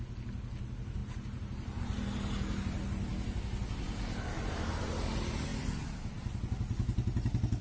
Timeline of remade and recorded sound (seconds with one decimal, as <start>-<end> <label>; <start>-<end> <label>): 0.0-7.6 recorded